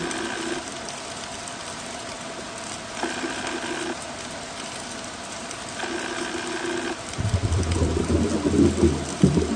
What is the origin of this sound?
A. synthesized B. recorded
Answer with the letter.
B